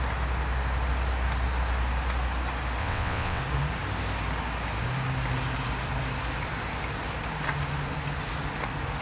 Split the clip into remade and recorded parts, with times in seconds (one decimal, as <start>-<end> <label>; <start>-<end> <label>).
0.0-2.8 recorded; 2.8-3.4 remade; 3.4-9.0 recorded